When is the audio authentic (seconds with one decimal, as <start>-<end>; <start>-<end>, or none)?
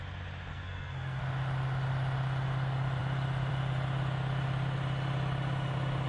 0.0-0.5; 1.2-6.1